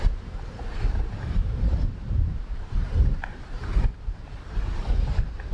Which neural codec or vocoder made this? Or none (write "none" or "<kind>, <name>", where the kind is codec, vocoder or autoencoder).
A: vocoder, BigVGAN v2